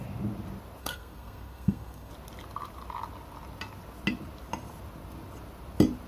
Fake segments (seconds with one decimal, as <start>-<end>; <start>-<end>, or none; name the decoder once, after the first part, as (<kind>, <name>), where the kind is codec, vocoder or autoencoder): 0.8-2.1 (codec, SNAC)